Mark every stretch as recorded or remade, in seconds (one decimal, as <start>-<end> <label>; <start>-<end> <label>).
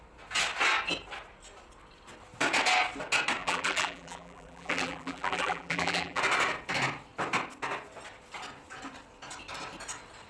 0.0-3.4 recorded; 3.4-6.2 remade; 6.2-10.3 recorded